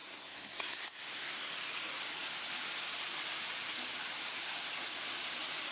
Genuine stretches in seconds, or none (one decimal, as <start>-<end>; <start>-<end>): 1.5-5.7